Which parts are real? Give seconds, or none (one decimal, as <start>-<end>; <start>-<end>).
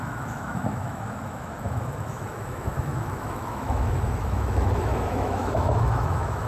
none